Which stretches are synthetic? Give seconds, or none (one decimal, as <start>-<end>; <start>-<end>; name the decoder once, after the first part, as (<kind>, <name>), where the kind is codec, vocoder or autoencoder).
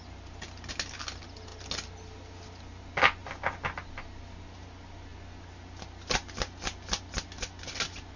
none